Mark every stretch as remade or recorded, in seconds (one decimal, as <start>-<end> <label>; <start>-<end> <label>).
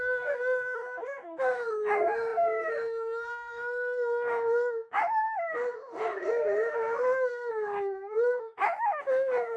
0.0-9.6 remade